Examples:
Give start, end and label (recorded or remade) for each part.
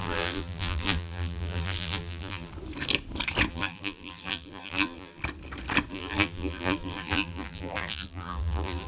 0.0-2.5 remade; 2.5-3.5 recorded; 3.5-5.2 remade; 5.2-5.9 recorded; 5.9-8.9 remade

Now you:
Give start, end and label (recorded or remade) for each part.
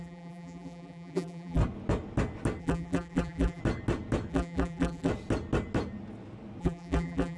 0.0-1.6 remade; 1.6-2.6 recorded; 2.6-3.6 remade; 3.6-4.3 recorded; 4.3-5.1 remade; 5.1-6.6 recorded; 6.6-7.4 remade